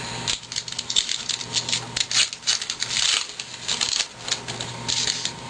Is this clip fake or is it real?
real